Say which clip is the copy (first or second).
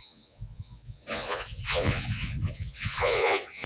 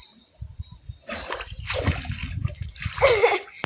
first